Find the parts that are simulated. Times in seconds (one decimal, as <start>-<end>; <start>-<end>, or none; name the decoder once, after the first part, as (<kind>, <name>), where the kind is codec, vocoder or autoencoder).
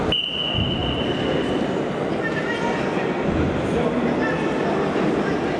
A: none